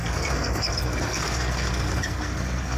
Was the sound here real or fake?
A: fake